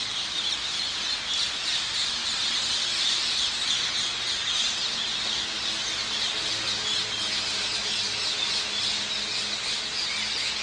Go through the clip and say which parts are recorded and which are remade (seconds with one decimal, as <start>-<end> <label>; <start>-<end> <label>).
0.0-10.6 recorded